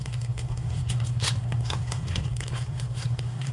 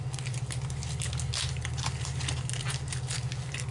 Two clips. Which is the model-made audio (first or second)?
first